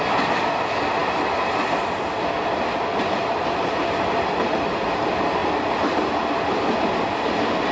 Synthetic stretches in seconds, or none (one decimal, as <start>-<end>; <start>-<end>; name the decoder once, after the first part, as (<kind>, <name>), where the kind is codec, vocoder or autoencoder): none